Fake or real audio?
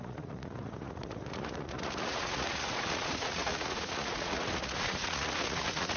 fake